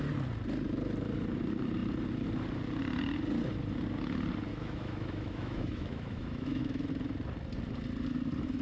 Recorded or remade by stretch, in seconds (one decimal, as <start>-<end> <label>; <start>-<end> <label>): 0.0-4.5 recorded; 4.5-6.9 remade; 6.9-8.6 recorded

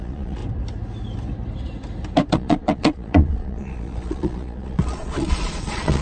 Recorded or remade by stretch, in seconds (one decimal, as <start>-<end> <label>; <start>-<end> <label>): 0.0-0.4 remade; 0.4-2.3 recorded; 2.3-6.0 remade

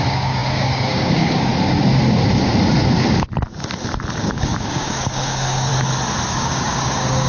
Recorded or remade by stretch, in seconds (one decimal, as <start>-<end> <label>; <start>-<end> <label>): 0.0-1.5 remade; 1.5-4.2 recorded; 4.2-5.7 remade; 5.7-6.3 recorded; 6.3-7.3 remade

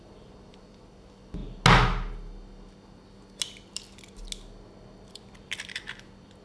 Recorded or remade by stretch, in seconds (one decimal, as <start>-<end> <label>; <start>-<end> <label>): 0.0-1.4 remade; 1.4-5.1 recorded; 5.1-6.4 remade